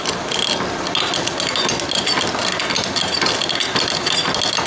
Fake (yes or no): no